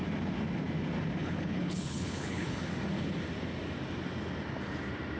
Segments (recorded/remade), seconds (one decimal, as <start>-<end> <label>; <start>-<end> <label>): 0.0-1.2 recorded; 1.2-2.6 remade; 2.6-5.2 recorded